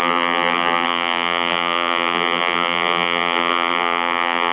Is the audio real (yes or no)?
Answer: no